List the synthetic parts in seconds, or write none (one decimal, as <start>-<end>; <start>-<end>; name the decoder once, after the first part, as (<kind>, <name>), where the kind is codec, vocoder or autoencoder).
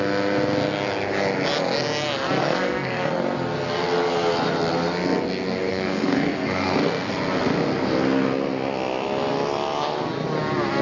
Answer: 2.4-3.2 (codec, SNAC); 5.7-7.1